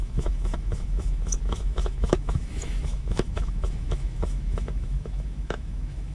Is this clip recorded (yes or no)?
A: no